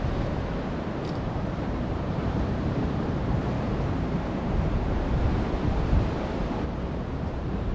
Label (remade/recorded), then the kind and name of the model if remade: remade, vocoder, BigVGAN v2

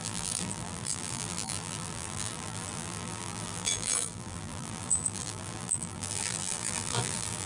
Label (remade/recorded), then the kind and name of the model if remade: remade, vocoder, BigVGAN v2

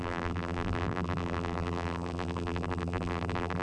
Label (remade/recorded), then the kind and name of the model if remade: remade, vocoder, BigVGAN v2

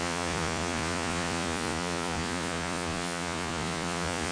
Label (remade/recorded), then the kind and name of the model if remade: remade, vocoder, Vocos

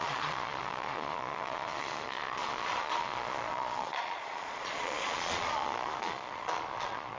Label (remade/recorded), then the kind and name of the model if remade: remade, vocoder, Vocos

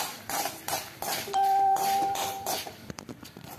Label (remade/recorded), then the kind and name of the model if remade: remade, vocoder, BigVGAN v2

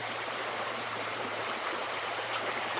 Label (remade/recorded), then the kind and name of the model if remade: remade, vocoder, BigVGAN v2